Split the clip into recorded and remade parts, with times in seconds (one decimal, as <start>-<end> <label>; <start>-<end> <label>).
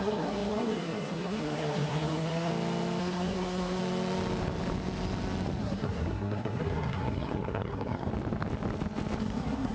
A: 0.0-2.5 remade; 2.5-3.0 recorded; 3.0-3.8 remade; 3.8-5.6 recorded; 5.6-8.1 remade; 8.1-9.2 recorded; 9.2-9.7 remade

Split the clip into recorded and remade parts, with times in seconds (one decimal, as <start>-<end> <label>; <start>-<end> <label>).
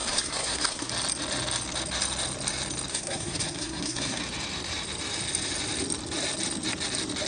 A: 0.0-0.9 remade; 0.9-2.9 recorded; 2.9-4.2 remade; 4.2-7.3 recorded